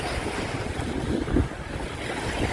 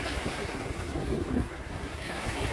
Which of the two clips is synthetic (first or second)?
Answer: second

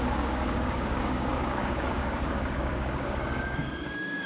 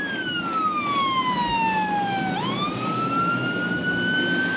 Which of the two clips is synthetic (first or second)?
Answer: first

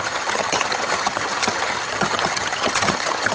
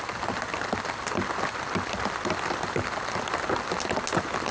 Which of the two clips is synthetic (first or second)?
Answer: first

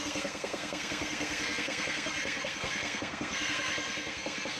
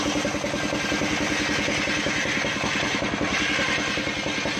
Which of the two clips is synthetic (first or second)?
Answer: first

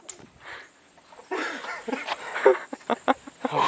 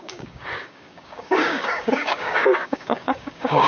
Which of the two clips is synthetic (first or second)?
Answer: second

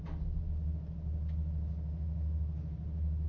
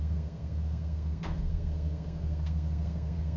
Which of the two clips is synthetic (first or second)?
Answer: second